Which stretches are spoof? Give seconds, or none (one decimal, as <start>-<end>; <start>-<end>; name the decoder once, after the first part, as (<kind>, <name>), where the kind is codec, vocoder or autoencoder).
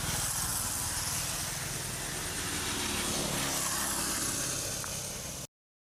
none